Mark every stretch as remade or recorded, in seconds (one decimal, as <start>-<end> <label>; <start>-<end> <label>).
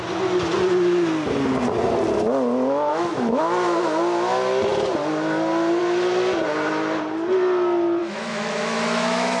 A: 0.0-2.9 recorded; 2.9-3.4 remade; 3.4-8.0 recorded; 8.0-9.4 remade